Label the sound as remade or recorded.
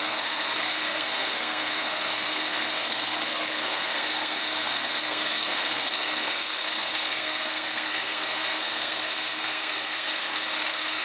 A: remade